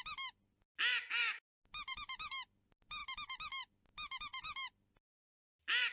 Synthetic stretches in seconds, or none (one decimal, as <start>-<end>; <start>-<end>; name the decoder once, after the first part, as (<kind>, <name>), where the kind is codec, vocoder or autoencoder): none